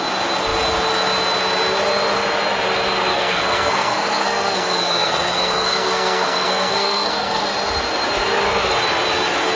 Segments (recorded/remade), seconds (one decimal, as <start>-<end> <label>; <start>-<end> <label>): 0.0-3.1 recorded; 3.1-7.4 remade; 7.4-9.6 recorded